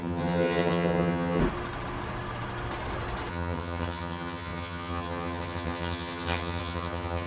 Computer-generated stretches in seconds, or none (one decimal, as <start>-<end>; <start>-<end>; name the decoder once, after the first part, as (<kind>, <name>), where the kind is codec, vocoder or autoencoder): 0.0-1.4 (vocoder, HiFi-GAN); 3.3-7.3